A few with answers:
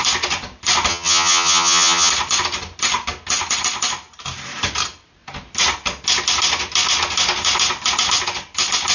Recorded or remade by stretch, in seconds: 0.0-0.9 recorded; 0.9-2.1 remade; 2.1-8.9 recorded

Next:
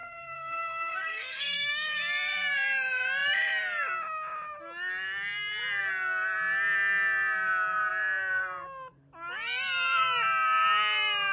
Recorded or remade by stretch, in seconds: 0.0-1.7 remade; 1.7-11.3 recorded